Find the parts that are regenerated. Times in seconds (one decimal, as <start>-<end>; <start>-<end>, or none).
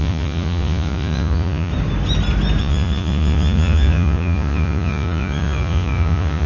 0.0-1.7; 2.6-6.5